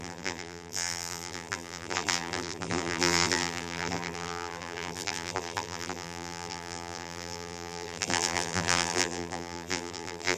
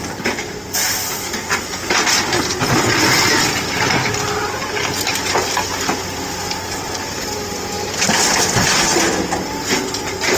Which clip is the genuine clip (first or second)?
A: second